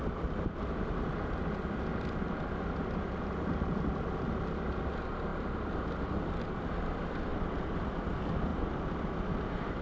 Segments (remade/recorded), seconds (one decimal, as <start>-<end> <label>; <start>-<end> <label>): 0.0-9.8 recorded